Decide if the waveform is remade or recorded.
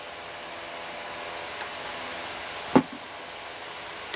recorded